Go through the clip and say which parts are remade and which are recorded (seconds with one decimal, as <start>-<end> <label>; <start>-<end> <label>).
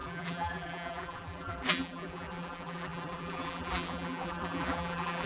0.0-5.3 remade